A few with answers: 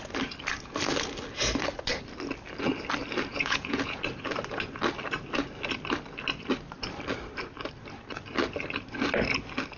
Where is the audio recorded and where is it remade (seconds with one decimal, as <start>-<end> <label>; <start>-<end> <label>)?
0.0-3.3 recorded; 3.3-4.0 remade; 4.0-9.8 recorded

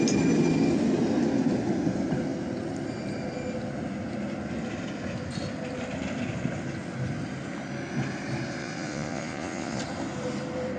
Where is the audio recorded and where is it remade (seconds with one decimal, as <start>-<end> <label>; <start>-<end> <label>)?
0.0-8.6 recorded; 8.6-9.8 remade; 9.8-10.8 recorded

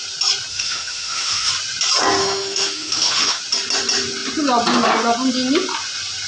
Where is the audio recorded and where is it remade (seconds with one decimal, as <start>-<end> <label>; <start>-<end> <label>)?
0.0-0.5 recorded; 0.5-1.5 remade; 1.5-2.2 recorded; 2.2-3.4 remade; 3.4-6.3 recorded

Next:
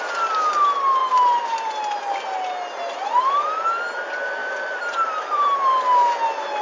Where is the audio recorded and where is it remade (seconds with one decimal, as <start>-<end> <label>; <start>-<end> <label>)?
0.0-4.4 recorded; 4.4-5.7 remade; 5.7-6.6 recorded

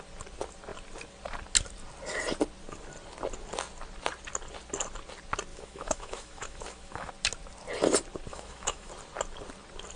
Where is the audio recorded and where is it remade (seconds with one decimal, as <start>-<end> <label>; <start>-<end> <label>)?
0.0-5.5 recorded; 5.5-7.1 remade; 7.1-8.3 recorded; 8.3-8.9 remade; 8.9-10.0 recorded

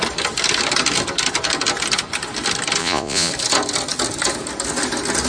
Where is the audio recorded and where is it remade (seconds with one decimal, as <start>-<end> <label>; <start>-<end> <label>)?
0.0-2.8 recorded; 2.8-3.3 remade; 3.3-5.3 recorded

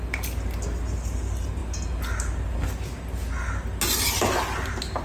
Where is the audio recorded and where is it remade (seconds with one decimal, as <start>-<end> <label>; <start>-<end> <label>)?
0.0-5.0 recorded

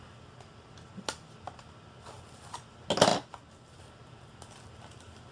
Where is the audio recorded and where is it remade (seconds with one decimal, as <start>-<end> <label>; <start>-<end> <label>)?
0.0-5.3 recorded